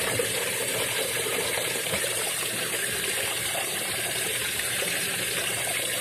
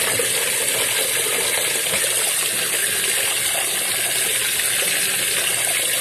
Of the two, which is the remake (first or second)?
first